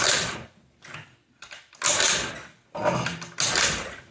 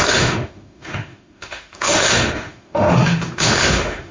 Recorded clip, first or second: first